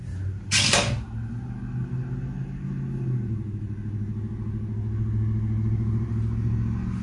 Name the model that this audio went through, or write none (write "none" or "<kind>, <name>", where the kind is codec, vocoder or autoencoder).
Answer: none